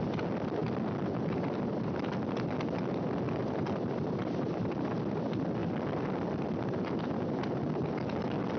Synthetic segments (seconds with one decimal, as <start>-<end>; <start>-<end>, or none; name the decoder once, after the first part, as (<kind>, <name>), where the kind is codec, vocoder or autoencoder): none